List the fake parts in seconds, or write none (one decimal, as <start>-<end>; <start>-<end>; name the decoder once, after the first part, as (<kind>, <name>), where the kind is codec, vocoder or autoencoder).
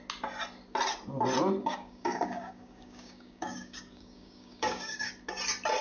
1.6-5.1 (codec, DAC)